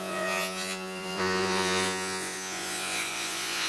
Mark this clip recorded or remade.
remade